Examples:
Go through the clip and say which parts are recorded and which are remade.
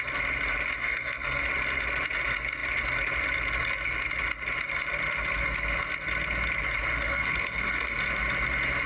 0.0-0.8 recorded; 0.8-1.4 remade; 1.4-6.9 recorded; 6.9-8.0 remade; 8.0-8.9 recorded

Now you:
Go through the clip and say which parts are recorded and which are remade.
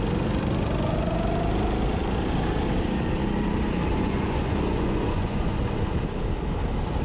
0.0-3.9 recorded; 3.9-5.6 remade; 5.6-7.0 recorded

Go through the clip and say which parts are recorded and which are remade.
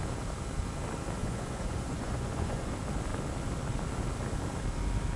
0.0-1.2 recorded; 1.2-2.7 remade; 2.7-5.2 recorded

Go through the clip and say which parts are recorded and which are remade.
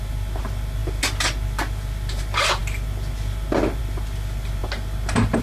0.0-5.4 recorded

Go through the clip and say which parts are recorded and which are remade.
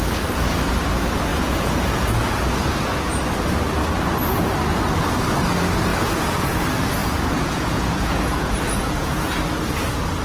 0.0-1.3 recorded; 1.3-2.6 remade; 2.6-5.9 recorded; 5.9-6.6 remade; 6.6-7.0 recorded; 7.0-9.4 remade; 9.4-10.2 recorded